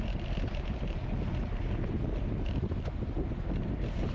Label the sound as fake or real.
real